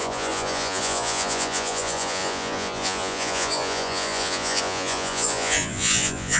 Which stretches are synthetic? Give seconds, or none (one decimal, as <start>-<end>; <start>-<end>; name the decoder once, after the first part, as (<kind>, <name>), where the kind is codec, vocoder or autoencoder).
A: 0.0-6.4 (vocoder, Vocos)